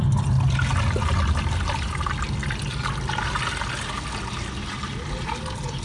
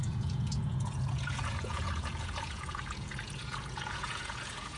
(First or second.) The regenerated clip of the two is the second